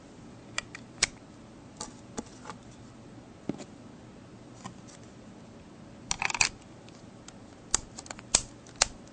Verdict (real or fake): real